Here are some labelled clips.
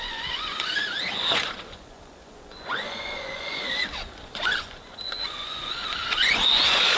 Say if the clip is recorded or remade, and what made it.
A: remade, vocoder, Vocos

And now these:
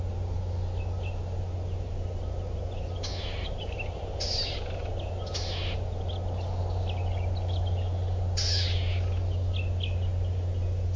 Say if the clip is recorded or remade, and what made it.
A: recorded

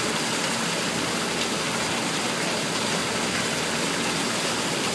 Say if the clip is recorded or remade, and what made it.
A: recorded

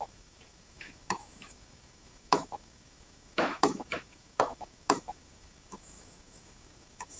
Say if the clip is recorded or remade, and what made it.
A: remade, autoencoder, DAC-VAE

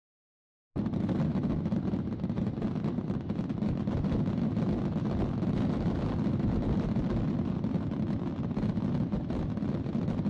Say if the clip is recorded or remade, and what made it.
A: recorded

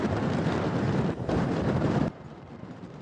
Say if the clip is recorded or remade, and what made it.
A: remade, vocoder, BigVGAN v2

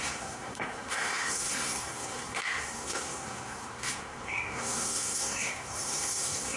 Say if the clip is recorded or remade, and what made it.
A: remade, codec, SNAC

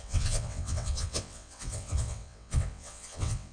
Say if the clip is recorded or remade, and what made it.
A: remade, vocoder, WaveNeXt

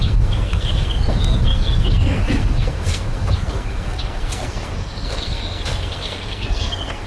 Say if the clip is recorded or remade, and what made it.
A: remade, codec, SNAC